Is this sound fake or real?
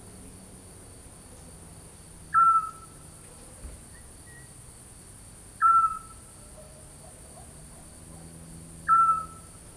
real